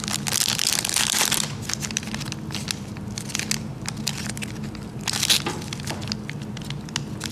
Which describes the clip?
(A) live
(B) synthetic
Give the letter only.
A